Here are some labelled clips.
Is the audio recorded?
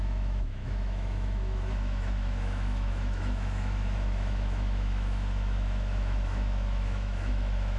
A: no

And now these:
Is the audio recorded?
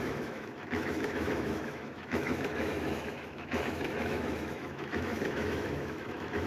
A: no